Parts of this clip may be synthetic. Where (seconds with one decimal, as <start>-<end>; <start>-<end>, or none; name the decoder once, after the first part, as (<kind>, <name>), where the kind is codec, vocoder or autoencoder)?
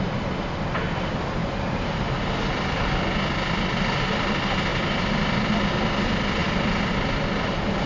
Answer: 1.4-2.2 (vocoder, BigVGAN v2)